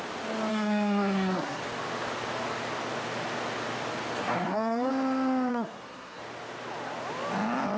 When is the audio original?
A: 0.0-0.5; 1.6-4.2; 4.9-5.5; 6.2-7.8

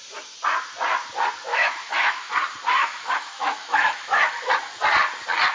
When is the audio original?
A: 0.0-1.5; 2.3-2.8; 4.5-5.5

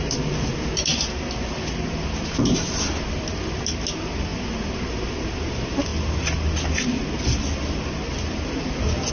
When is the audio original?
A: 0.0-9.1

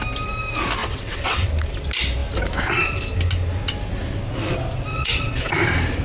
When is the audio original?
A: 0.0-0.8; 1.5-4.9; 5.5-6.0

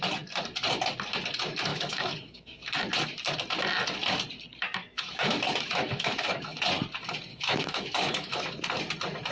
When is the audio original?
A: 0.0-1.7; 2.8-4.8; 6.6-7.3; 8.5-9.3

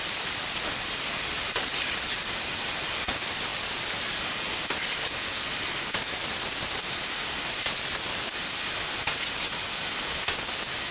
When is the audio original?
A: 0.0-10.9

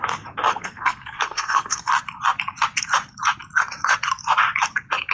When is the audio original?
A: 0.0-0.5; 1.9-5.1